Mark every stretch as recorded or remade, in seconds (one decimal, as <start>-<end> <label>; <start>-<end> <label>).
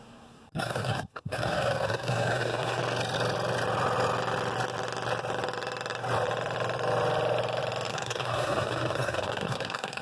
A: 0.0-2.8 remade; 2.8-7.9 recorded; 7.9-10.0 remade